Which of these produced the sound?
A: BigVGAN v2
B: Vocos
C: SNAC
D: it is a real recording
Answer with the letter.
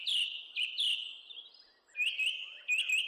D